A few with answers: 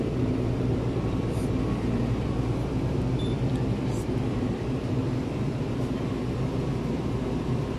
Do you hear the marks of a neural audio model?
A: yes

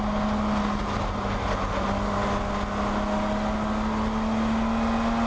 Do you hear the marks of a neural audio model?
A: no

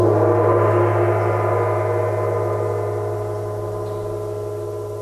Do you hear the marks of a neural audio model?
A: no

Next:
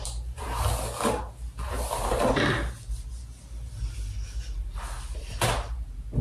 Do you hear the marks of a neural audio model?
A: no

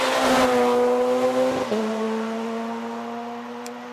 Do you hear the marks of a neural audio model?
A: no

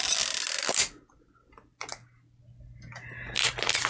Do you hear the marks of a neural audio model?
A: no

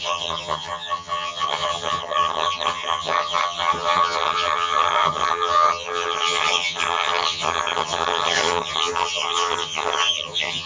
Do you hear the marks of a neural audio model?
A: yes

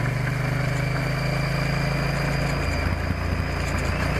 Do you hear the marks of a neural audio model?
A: no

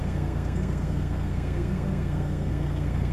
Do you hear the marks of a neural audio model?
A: yes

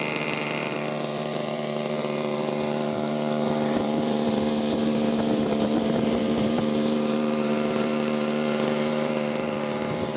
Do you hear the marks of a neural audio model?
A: yes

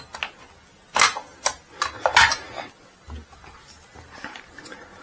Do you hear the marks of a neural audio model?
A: no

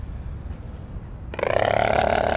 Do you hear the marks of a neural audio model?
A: no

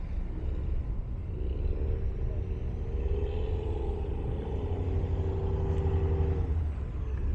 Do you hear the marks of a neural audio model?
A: no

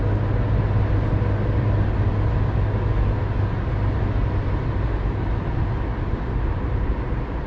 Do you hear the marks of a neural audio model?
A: no